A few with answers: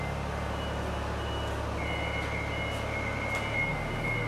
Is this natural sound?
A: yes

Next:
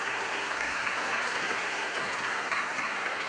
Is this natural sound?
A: no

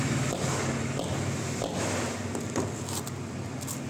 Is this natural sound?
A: yes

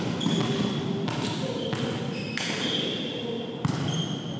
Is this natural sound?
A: yes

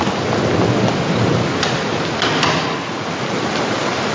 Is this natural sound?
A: yes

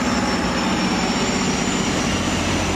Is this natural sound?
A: yes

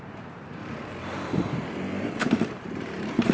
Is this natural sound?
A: no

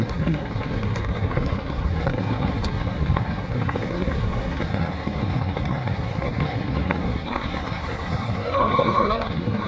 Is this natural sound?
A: no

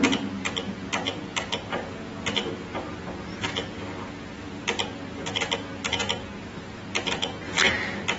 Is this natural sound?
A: yes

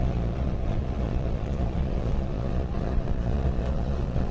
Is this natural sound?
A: no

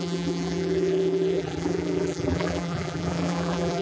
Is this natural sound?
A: no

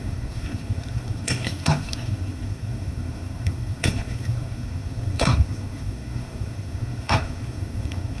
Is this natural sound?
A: no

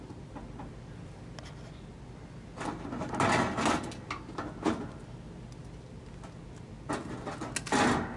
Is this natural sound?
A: yes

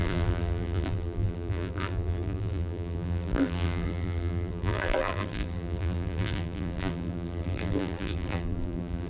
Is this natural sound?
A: no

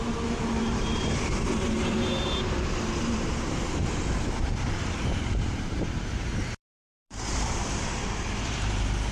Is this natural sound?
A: no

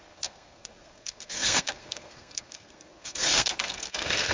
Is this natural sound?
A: no